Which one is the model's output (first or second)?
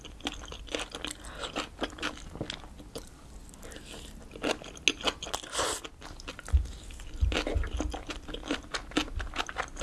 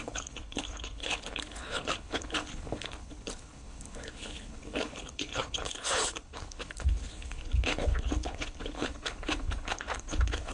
second